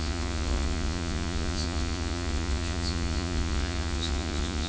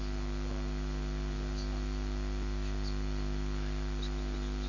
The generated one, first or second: first